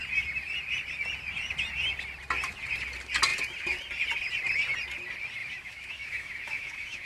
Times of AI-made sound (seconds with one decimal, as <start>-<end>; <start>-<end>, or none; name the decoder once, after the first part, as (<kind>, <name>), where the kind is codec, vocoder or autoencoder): 5.4-7.1 (autoencoder, DAC-VAE)